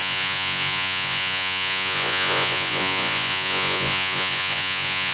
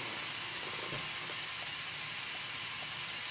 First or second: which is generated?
first